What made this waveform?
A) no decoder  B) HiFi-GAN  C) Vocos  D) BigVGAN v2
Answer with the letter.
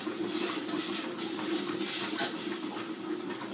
A